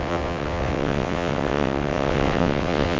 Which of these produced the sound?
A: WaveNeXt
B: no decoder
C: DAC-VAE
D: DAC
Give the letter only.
A